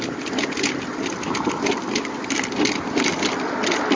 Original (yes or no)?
yes